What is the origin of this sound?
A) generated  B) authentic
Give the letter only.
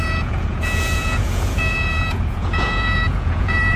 A